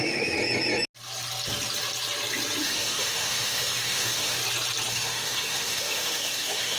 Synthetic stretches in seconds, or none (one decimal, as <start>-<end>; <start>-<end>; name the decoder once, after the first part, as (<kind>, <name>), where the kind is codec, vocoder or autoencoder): 0.0-0.4 (autoencoder, DAC-VAE); 2.6-4.4; 4.9-6.8